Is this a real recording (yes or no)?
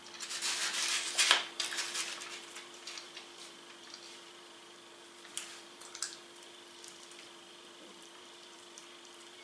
no